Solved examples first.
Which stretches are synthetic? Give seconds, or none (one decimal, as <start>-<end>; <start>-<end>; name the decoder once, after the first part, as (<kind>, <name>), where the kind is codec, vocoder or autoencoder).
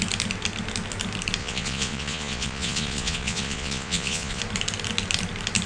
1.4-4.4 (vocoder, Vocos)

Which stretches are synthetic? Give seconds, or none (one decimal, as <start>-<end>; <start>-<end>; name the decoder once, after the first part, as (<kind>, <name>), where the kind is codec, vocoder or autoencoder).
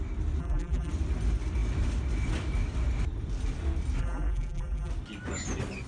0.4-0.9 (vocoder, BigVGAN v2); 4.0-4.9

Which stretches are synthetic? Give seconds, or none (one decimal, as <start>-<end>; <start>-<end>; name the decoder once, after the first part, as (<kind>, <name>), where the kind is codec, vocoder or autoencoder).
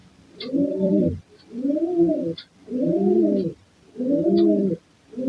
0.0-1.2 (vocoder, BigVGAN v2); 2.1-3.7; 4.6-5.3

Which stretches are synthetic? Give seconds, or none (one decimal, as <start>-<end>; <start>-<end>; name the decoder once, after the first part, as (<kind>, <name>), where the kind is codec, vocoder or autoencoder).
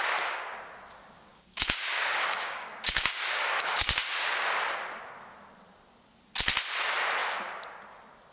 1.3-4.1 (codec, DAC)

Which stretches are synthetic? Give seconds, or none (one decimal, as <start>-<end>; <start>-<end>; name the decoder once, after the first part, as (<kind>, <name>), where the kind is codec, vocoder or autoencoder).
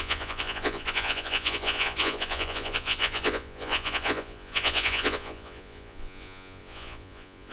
0.0-7.5 (vocoder, Vocos)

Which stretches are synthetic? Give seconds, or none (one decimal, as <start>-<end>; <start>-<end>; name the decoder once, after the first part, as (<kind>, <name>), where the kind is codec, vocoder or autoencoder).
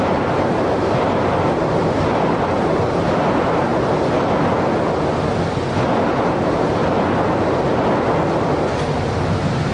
0.0-3.7 (vocoder, BigVGAN v2); 5.8-6.8; 9.1-9.7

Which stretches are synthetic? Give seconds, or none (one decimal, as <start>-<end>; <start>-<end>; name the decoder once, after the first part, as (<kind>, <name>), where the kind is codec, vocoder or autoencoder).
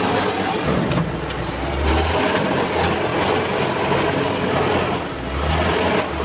none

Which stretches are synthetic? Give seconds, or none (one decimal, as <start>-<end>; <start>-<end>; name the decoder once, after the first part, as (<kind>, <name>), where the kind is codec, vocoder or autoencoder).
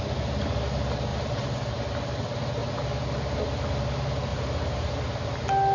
1.1-1.7 (vocoder, BigVGAN v2); 4.3-4.9